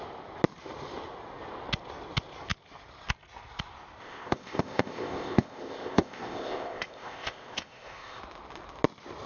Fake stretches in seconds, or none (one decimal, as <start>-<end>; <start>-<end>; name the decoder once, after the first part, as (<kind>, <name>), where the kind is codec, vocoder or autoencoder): 4.0-8.2 (codec, ZipCodec)